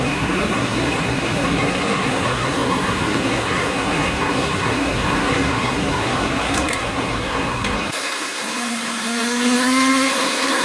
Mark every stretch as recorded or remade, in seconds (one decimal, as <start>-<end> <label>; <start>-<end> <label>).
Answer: 0.0-10.6 remade